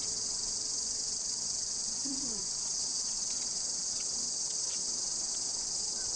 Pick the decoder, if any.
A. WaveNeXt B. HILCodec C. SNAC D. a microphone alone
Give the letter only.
A